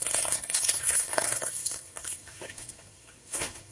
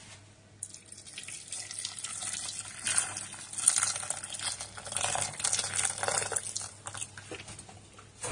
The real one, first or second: second